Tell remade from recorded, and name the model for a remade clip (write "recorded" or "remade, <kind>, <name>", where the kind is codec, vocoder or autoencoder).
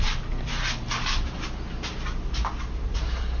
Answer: recorded